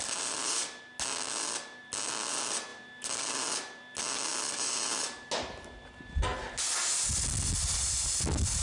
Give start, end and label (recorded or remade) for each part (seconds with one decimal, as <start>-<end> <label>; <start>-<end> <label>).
0.0-8.6 recorded